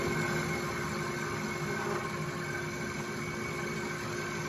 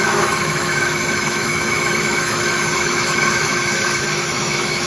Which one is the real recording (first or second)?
first